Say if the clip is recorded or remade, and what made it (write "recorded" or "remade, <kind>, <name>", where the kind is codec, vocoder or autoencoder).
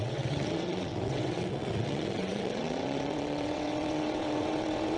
remade, vocoder, WaveNeXt